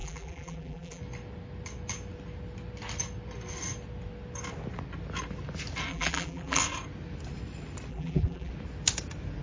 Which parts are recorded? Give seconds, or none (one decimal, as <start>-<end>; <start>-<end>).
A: 1.0-5.9; 6.6-7.9; 8.5-9.4